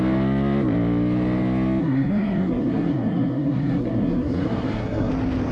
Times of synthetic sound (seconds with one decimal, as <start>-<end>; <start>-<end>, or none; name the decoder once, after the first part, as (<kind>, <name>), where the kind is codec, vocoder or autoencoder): 1.8-5.1 (codec, SNAC)